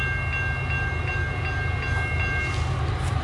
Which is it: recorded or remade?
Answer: recorded